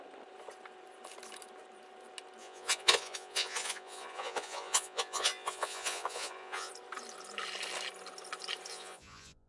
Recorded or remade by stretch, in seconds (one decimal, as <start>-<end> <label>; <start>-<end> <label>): 0.0-2.4 recorded; 2.4-6.7 remade; 6.7-8.7 recorded; 8.7-9.5 remade